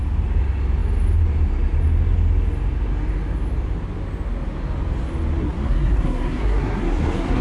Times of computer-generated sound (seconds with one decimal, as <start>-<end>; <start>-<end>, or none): 5.4-7.4